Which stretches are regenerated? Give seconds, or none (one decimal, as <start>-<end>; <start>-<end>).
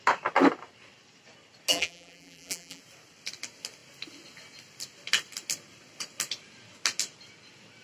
1.7-2.8